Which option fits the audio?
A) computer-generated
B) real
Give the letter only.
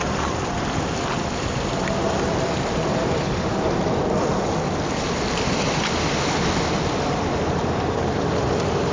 A